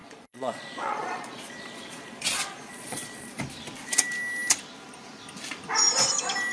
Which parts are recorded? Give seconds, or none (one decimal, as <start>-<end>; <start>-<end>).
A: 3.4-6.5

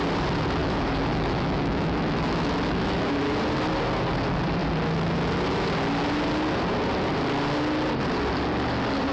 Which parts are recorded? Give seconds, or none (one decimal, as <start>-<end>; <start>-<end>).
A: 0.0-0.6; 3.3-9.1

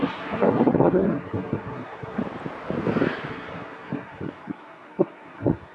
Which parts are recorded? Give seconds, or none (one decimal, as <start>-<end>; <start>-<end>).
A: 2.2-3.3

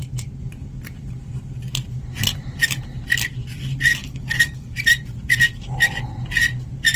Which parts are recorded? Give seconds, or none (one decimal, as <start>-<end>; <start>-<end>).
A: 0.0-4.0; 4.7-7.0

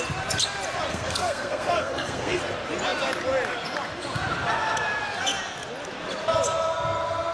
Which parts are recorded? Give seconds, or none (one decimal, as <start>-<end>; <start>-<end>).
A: 0.0-0.9; 2.4-7.3

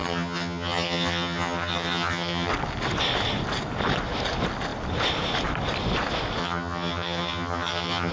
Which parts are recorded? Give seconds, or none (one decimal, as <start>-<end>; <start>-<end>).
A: 2.5-6.4

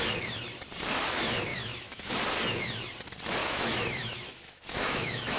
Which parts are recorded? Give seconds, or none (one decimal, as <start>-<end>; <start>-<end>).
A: 0.0-1.5; 2.1-3.4

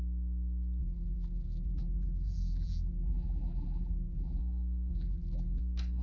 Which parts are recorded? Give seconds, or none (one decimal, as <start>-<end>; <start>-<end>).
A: 0.0-0.8; 4.4-4.9; 5.6-6.0